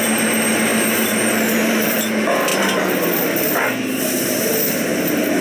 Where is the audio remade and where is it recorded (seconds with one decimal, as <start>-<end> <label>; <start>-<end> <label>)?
0.0-0.7 recorded; 0.7-2.0 remade; 2.0-5.4 recorded